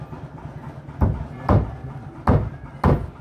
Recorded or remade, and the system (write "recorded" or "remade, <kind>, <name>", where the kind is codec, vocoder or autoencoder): recorded